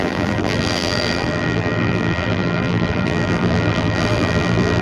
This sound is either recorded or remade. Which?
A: remade